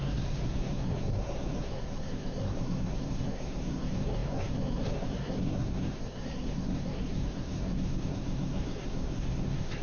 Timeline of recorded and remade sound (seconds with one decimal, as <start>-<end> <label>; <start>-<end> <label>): 0.0-9.8 remade